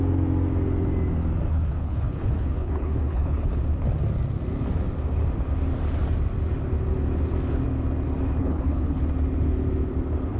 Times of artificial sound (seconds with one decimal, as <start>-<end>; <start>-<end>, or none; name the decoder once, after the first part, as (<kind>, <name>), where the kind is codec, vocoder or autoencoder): 1.5-3.6 (codec, HILCodec); 8.4-9.0